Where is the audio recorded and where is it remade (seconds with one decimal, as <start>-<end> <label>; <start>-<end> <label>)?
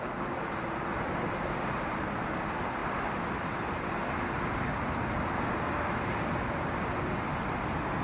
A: 0.0-8.0 recorded